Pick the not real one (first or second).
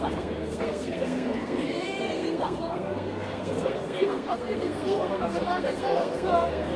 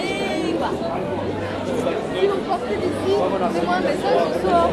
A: first